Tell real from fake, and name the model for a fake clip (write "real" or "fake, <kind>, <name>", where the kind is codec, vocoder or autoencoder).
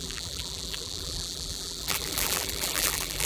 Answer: fake, vocoder, BigVGAN v2